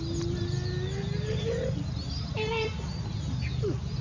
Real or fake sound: real